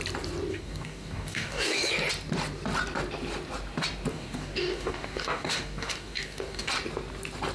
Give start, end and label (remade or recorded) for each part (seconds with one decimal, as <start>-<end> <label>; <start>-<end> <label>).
0.0-0.5 recorded; 0.5-1.9 remade; 1.9-4.1 recorded; 4.1-6.7 remade; 6.7-7.5 recorded